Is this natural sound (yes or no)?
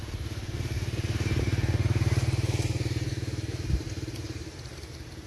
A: no